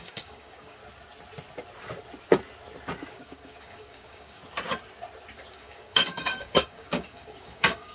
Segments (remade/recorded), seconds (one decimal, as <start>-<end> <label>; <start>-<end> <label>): 0.0-0.8 remade; 0.8-3.1 recorded; 3.1-4.4 remade; 4.4-5.5 recorded; 5.5-7.9 remade